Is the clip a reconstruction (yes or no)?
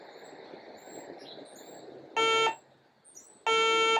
no